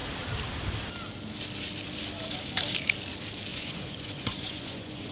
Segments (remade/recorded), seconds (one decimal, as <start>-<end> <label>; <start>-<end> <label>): 0.0-3.5 recorded; 3.5-5.1 remade